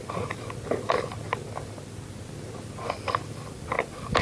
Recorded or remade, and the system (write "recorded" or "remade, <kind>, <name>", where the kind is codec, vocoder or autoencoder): recorded